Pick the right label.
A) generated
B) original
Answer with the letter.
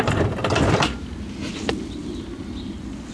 B